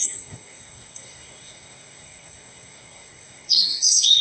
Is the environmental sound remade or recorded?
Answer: remade